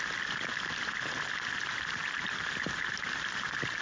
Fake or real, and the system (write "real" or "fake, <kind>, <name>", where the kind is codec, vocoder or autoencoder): real